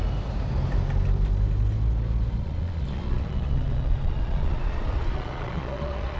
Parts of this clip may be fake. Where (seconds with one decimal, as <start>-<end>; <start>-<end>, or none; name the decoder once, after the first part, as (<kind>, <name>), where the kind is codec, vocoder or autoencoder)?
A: 2.4-6.2 (vocoder, Vocos)